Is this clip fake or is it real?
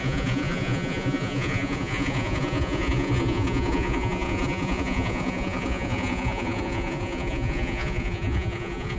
fake